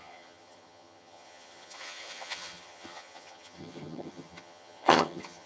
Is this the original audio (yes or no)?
no